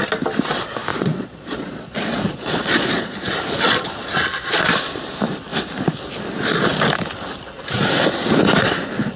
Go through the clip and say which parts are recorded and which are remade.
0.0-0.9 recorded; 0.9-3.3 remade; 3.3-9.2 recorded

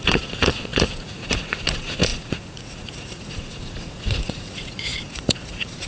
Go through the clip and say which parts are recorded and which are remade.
0.0-5.9 remade

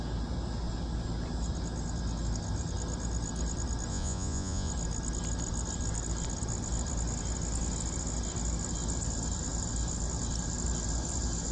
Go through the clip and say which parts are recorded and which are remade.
0.0-3.9 recorded; 3.9-4.7 remade; 4.7-11.5 recorded

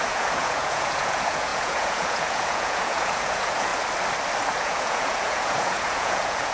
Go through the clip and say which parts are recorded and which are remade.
0.0-3.7 remade; 3.7-4.6 recorded; 4.6-6.5 remade

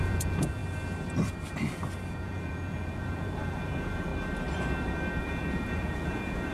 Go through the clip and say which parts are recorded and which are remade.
0.0-0.6 remade; 0.6-2.1 recorded; 2.1-4.1 remade; 4.1-5.2 recorded; 5.2-6.5 remade

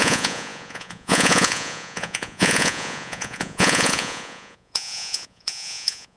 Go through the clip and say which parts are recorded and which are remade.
0.0-6.2 remade

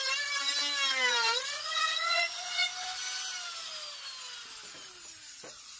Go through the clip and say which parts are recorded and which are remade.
0.0-0.9 recorded; 0.9-2.7 remade; 2.7-5.3 recorded; 5.3-5.8 remade

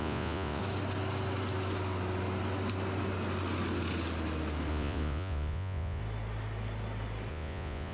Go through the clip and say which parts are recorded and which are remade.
0.0-0.6 remade; 0.6-4.7 recorded; 4.7-6.0 remade; 6.0-7.3 recorded; 7.3-7.9 remade